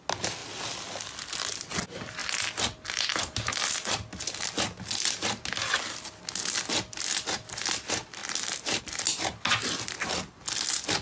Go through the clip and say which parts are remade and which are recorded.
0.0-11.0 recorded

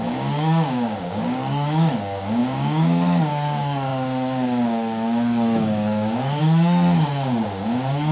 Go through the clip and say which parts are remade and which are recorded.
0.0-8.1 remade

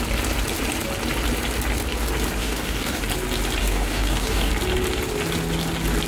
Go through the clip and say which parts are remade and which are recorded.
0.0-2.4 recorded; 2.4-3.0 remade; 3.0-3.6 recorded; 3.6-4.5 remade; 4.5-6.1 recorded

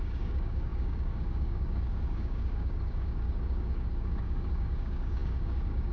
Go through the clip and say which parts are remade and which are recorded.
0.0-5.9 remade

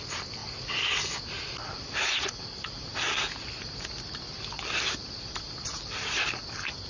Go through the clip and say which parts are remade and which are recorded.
0.0-6.9 recorded

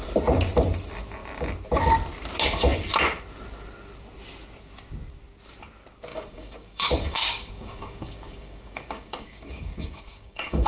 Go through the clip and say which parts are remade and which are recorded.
0.0-6.1 recorded; 6.1-10.7 remade

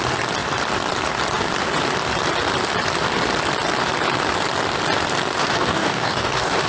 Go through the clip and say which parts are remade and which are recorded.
0.0-5.4 recorded; 5.4-6.7 remade

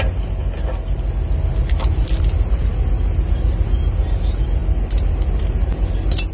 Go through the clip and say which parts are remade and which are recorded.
0.0-6.3 recorded